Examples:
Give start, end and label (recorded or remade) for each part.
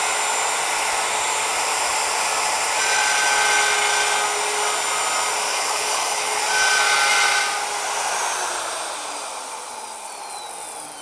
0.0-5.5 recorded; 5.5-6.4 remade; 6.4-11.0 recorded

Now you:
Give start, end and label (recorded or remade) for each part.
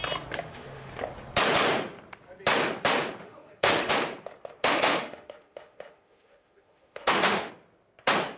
0.0-0.4 recorded; 0.4-0.9 remade; 0.9-3.2 recorded; 3.2-3.9 remade; 3.9-4.6 recorded; 4.6-7.5 remade; 7.5-8.4 recorded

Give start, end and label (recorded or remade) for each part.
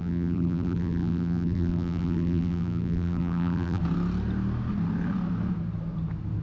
0.0-3.8 remade; 3.8-6.4 recorded